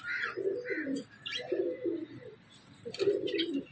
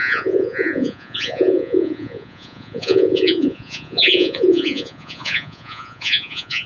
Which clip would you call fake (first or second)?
second